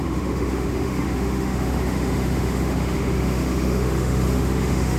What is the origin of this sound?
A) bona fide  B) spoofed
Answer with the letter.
B